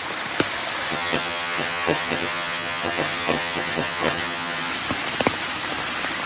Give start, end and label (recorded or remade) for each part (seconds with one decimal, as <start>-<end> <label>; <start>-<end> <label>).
0.0-0.9 recorded; 0.9-4.7 remade; 4.7-6.3 recorded